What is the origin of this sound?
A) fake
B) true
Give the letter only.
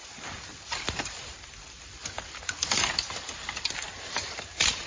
A